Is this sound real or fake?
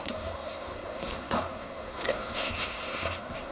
fake